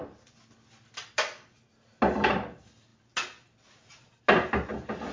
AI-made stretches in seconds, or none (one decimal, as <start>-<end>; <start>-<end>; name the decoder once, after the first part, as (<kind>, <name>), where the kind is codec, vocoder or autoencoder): none